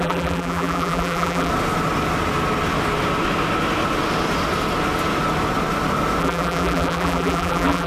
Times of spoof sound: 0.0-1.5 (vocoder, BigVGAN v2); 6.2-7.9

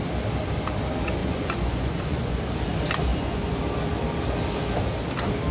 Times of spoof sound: 1.2-2.4 (vocoder, Vocos); 3.1-3.6

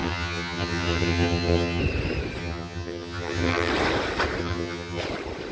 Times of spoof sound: 0.0-1.8 (vocoder, HiFi-GAN); 2.4-3.7; 4.4-5.0